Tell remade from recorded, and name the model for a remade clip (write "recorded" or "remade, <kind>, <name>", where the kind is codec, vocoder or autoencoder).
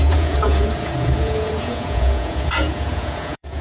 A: remade, vocoder, Vocos